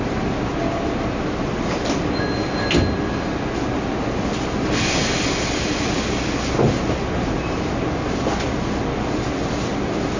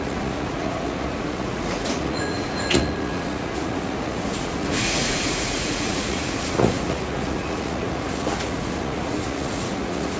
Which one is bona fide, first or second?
first